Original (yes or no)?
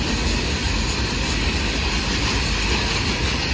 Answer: yes